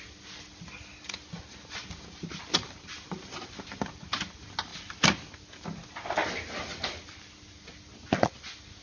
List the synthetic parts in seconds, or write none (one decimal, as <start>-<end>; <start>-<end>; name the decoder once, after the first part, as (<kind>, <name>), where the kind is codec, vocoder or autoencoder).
none